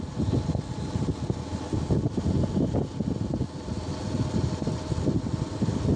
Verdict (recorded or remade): recorded